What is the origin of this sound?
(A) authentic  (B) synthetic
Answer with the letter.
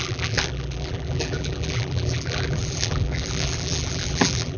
B